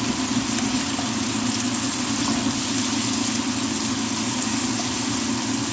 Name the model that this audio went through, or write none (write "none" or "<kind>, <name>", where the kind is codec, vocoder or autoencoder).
none